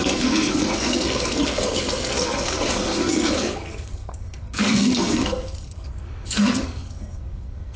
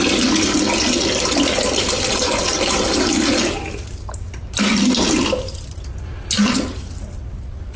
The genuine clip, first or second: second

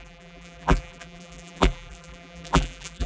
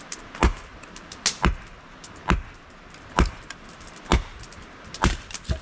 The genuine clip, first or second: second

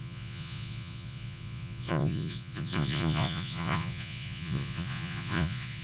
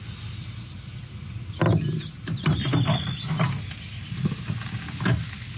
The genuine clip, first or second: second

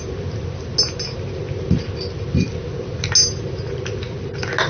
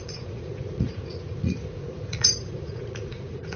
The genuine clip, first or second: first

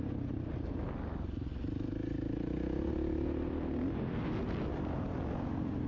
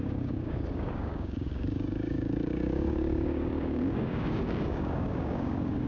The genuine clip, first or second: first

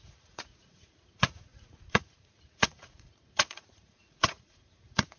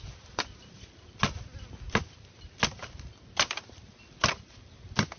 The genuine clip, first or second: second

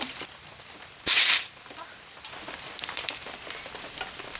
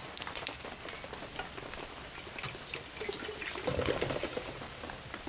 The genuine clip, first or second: second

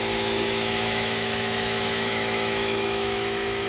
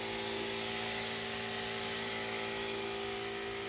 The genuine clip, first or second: second